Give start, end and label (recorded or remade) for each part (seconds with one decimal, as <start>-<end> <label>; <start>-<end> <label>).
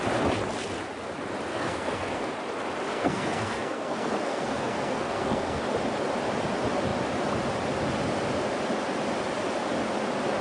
0.0-1.5 recorded; 1.5-2.3 remade; 2.3-2.9 recorded; 2.9-5.6 remade; 5.6-10.4 recorded